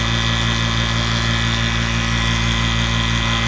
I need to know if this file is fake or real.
real